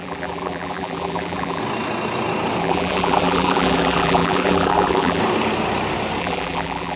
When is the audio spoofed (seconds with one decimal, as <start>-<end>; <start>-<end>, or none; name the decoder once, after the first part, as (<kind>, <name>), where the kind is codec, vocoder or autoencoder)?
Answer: 0.0-1.6 (vocoder, BigVGAN v2); 2.6-5.2; 6.2-7.0